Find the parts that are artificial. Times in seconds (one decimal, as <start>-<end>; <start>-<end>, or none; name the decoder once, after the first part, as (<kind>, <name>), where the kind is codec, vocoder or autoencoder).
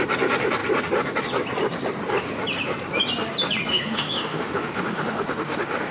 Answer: 3.7-5.9 (autoencoder, DAC-VAE)